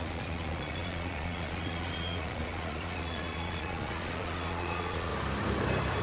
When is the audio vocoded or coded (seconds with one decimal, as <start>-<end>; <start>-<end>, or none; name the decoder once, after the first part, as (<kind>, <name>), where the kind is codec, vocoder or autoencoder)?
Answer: 0.0-5.1 (vocoder, Vocos)